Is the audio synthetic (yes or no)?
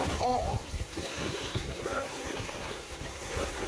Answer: yes